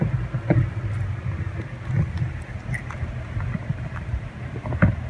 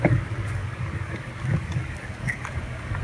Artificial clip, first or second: second